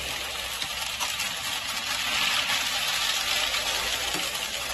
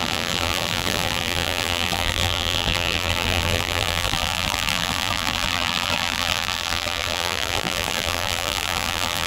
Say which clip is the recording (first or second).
first